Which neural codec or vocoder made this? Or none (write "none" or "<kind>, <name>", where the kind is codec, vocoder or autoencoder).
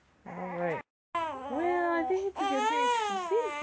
none